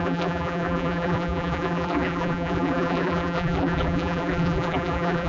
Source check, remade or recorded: remade